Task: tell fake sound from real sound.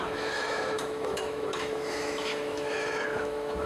fake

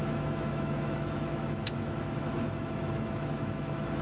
fake